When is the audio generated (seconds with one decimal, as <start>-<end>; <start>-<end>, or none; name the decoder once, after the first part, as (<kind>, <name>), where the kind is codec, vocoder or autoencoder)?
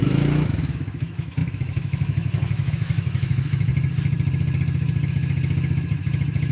0.0-3.7 (autoencoder, DAC-VAE); 5.1-6.5